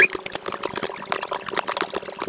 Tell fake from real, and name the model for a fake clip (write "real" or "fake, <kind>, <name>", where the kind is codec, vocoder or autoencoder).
real